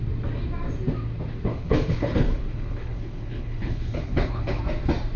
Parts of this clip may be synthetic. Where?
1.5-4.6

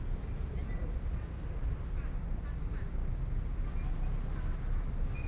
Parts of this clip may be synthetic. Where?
none

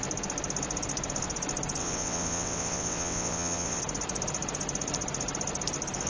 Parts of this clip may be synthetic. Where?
1.8-3.8